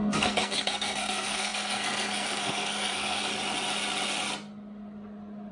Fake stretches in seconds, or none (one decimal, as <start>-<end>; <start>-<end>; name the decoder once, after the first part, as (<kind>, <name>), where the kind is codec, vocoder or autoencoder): 0.0-3.3 (codec, SNAC)